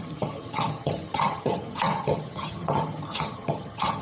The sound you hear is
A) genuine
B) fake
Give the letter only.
B